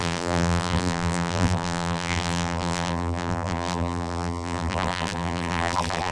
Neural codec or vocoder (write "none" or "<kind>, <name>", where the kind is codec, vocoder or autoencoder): vocoder, BigVGAN v2